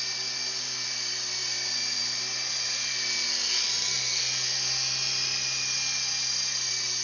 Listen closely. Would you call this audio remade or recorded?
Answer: recorded